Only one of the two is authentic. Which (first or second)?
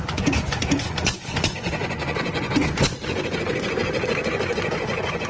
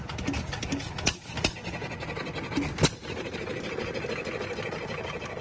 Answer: second